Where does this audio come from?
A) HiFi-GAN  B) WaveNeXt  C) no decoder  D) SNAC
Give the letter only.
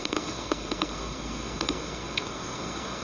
D